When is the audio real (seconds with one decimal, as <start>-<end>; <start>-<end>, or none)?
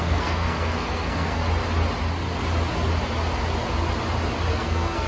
1.4-4.5